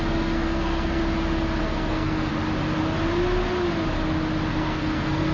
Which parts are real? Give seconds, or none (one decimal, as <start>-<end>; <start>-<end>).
1.0-1.6; 2.3-4.5